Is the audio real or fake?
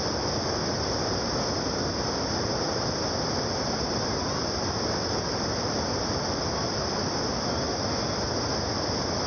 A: real